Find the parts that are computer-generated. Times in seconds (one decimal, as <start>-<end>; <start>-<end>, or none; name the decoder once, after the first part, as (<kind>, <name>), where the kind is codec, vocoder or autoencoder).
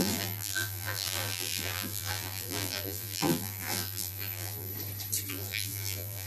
0.0-4.7 (vocoder, BigVGAN v2); 5.3-6.3